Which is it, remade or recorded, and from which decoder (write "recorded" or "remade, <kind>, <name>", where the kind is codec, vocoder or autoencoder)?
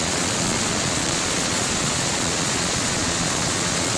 remade, vocoder, Vocos